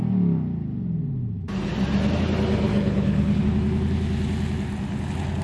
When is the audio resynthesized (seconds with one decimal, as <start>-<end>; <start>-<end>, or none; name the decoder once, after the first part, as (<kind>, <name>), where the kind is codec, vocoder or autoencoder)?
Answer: 2.7-3.4 (codec, HILCodec)